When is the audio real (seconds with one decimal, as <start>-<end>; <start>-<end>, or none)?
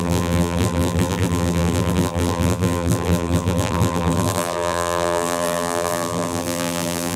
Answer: none